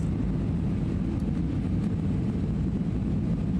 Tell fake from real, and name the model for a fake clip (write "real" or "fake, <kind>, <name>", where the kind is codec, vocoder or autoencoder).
real